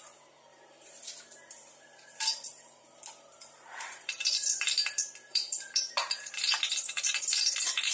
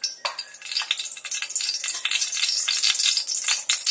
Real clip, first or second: second